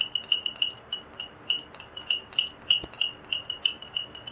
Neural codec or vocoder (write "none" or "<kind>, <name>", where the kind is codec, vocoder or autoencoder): none